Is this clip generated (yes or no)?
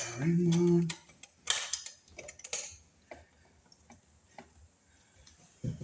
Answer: no